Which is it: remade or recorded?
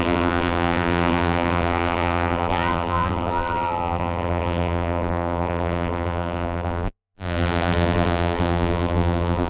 remade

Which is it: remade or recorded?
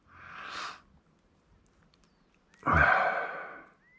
recorded